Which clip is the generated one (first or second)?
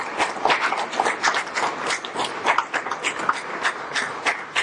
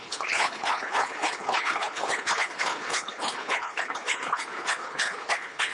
second